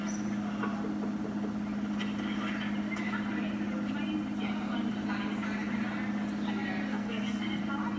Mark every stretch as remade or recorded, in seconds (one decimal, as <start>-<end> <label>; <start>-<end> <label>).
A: 0.0-6.9 recorded; 6.9-7.6 remade; 7.6-8.0 recorded